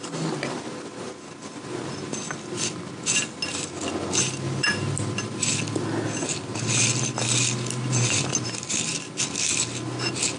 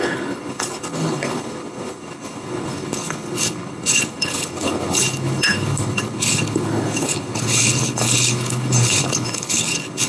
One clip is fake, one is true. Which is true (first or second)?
first